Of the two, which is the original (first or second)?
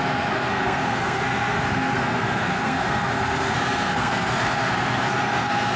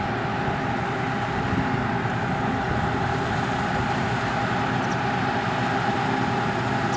second